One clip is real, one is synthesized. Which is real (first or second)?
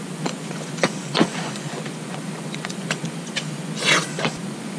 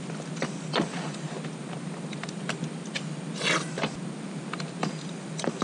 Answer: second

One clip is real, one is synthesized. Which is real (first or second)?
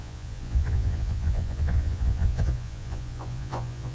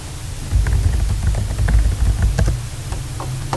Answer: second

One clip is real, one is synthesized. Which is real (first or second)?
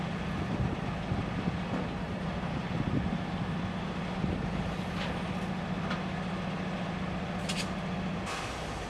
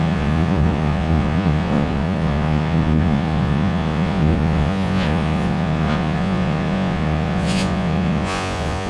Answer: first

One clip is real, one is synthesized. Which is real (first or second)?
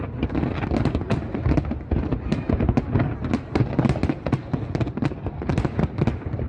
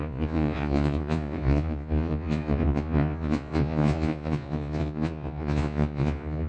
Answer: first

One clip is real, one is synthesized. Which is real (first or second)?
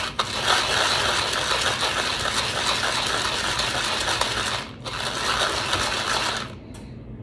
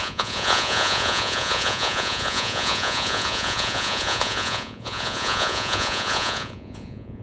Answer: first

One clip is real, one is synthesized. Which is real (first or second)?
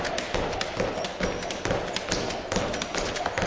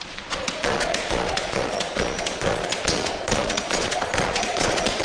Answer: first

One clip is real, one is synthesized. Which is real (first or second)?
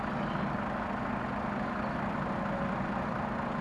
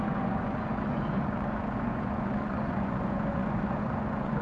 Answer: first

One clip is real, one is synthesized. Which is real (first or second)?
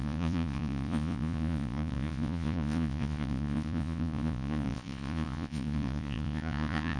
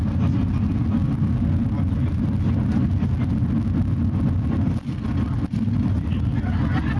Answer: second